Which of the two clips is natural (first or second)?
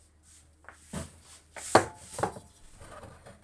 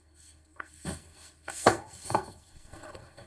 first